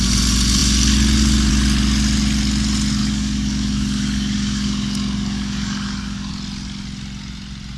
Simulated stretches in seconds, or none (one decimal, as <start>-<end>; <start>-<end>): 3.0-6.3